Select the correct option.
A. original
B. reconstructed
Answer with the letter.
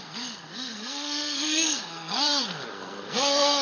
B